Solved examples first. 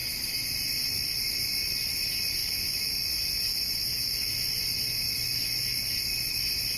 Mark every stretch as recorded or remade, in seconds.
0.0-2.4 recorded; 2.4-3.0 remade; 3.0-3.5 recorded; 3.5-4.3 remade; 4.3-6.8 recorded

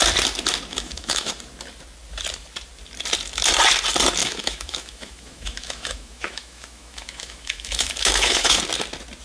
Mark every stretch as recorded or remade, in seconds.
0.0-0.7 recorded; 0.7-1.3 remade; 1.3-4.2 recorded; 4.2-8.6 remade; 8.6-9.2 recorded